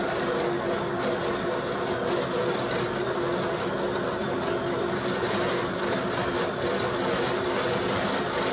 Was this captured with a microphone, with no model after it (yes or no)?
yes